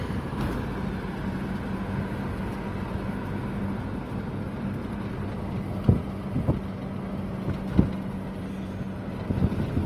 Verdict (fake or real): real